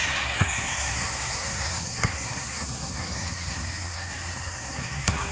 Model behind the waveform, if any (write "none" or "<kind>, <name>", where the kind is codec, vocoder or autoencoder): codec, SNAC